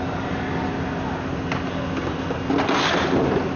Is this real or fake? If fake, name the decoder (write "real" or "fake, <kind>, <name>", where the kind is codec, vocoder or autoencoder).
real